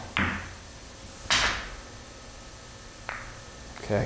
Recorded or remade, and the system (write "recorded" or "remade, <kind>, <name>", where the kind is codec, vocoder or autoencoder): recorded